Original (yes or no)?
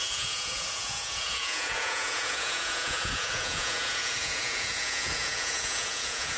no